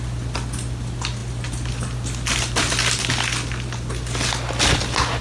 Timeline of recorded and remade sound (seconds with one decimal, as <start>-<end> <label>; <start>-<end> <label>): 0.0-5.2 recorded

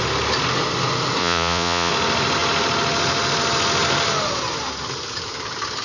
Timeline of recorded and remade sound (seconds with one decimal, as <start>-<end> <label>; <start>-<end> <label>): 0.0-1.2 recorded; 1.2-1.9 remade; 1.9-5.8 recorded

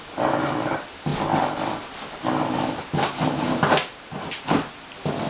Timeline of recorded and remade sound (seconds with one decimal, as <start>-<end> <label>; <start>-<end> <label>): 0.0-5.3 recorded

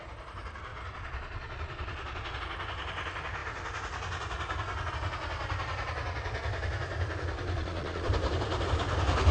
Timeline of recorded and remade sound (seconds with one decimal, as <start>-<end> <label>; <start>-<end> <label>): 0.0-0.7 recorded; 0.7-2.4 remade; 2.4-7.6 recorded; 7.6-8.1 remade; 8.1-9.3 recorded

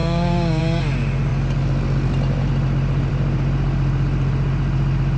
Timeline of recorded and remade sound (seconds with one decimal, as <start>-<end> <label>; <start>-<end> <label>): 0.0-0.6 remade; 0.6-5.2 recorded

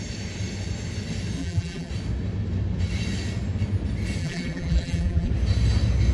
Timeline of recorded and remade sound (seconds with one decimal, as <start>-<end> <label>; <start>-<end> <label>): 0.0-1.4 recorded; 1.4-1.9 remade; 1.9-4.2 recorded; 4.2-5.3 remade; 5.3-6.1 recorded

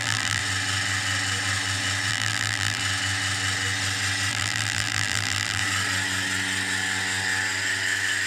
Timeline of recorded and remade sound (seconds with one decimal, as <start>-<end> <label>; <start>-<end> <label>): 0.0-0.4 remade; 0.4-2.1 recorded; 2.1-2.8 remade; 2.8-4.3 recorded; 4.3-5.6 remade; 5.6-8.3 recorded

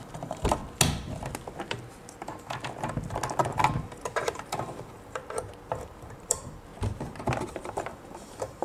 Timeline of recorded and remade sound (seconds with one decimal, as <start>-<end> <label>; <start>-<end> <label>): 0.0-0.6 remade; 0.6-3.8 recorded; 3.8-5.2 remade; 5.2-5.7 recorded; 5.7-6.7 remade; 6.7-7.5 recorded; 7.5-8.6 remade